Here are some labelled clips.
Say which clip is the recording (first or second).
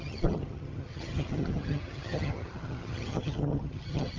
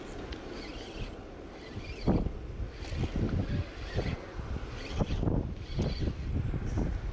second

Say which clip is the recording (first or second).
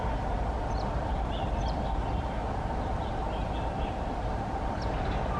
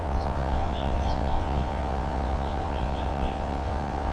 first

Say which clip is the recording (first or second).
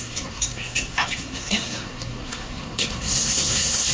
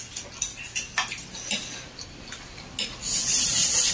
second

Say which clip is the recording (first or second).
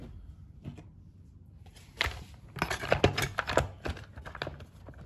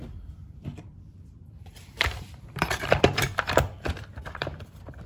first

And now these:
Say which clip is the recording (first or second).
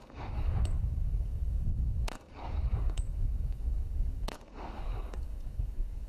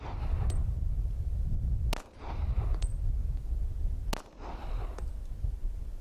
second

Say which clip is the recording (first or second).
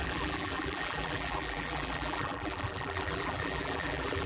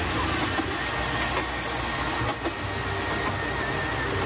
second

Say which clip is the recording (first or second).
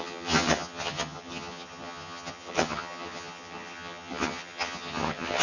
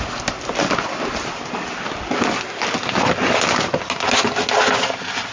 second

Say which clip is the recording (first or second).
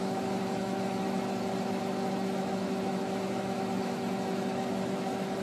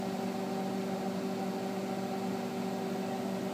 second